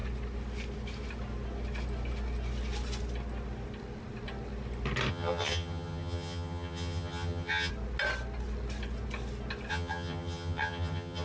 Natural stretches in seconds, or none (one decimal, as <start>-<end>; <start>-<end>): 0.0-5.1; 7.7-9.7